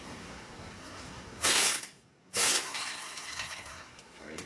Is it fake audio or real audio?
fake